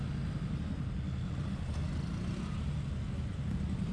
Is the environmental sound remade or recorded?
recorded